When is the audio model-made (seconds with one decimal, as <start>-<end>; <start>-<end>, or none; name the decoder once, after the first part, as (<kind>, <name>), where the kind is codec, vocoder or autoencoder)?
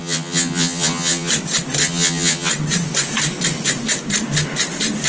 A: 0.0-1.3 (vocoder, HiFi-GAN); 1.8-2.5